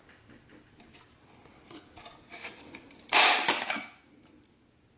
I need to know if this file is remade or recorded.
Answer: recorded